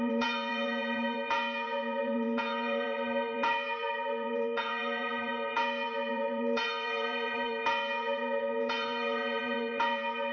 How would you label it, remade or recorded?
remade